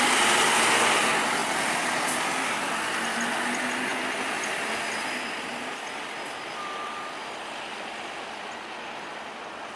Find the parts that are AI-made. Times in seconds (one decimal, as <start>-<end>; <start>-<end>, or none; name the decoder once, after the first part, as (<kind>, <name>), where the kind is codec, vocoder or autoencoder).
1.4-2.7 (vocoder, BigVGAN v2); 5.5-8.9